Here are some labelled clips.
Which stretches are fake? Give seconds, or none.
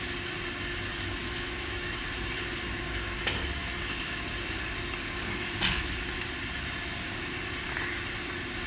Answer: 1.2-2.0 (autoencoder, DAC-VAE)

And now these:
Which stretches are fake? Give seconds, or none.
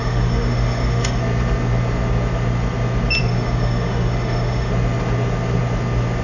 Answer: 0.0-1.2 (autoencoder, DAC-VAE); 3.2-4.7